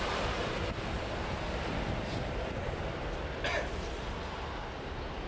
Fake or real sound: real